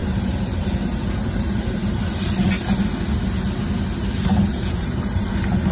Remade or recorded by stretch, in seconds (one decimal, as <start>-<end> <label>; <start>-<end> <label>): 0.0-2.0 remade; 2.0-4.5 recorded; 4.5-5.3 remade; 5.3-5.7 recorded